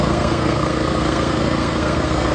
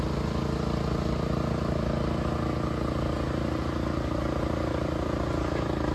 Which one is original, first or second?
second